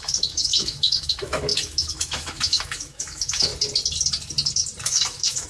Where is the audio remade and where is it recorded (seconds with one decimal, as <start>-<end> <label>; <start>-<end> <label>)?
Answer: 0.0-3.5 remade; 3.5-4.8 recorded; 4.8-5.5 remade